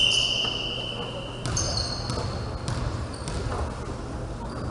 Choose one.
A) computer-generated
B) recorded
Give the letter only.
B